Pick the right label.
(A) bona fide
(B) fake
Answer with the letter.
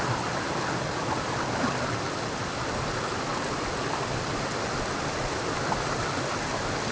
A